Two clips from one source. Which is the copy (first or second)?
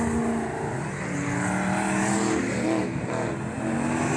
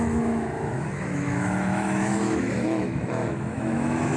second